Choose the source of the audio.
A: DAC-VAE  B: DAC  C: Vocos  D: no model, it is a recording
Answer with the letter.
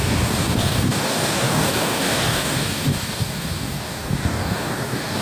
B